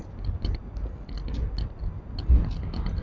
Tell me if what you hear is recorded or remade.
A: recorded